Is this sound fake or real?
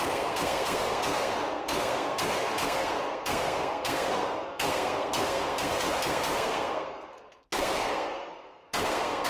fake